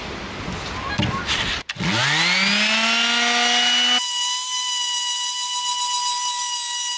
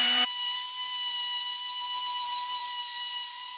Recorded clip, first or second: first